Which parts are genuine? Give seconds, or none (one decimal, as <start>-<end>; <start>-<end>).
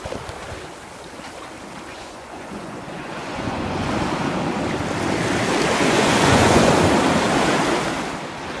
0.0-1.9; 3.9-5.8; 6.7-8.6